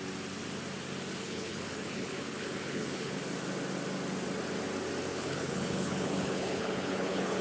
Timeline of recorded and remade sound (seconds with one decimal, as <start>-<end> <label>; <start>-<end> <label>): 0.0-1.2 recorded; 1.2-3.2 remade; 3.2-5.1 recorded; 5.1-7.4 remade